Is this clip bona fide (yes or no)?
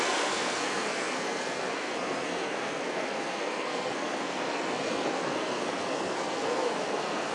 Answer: no